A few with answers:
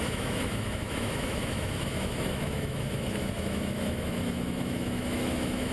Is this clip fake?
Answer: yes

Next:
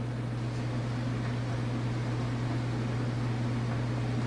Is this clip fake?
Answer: no